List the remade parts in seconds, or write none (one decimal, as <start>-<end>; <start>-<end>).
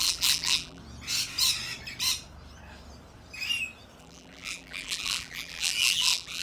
0.0-0.8; 4.0-6.4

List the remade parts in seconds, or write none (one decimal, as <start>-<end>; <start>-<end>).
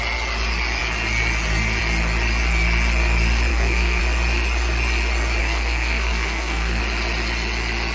3.5-4.0; 5.4-6.8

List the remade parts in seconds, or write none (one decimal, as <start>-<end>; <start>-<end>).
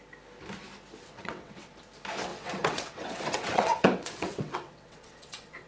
1.0-1.7; 2.3-5.7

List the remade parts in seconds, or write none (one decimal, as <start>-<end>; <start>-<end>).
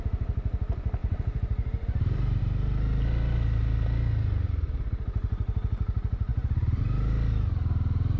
1.0-2.4; 6.3-6.8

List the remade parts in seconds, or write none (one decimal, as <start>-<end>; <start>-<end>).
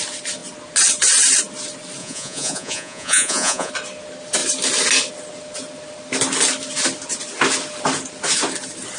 2.0-3.7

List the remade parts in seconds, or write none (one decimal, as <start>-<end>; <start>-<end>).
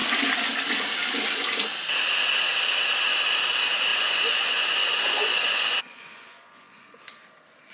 3.9-7.0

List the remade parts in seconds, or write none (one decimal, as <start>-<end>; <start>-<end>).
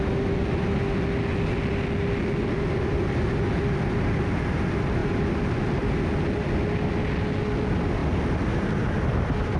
none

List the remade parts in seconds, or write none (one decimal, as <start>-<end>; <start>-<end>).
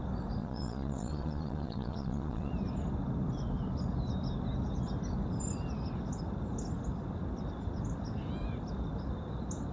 0.4-2.5